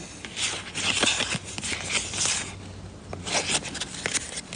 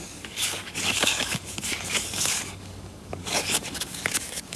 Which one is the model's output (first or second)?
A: second